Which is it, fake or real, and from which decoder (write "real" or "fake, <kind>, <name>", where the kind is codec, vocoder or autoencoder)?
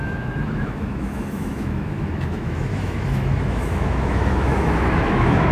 fake, autoencoder, DAC-VAE